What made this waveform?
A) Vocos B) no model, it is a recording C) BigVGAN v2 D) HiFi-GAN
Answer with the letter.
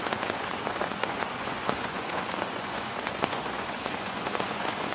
A